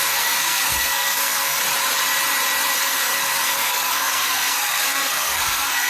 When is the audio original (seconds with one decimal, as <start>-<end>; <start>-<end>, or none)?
1.6-2.8